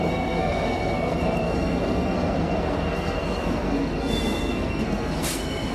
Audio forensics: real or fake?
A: fake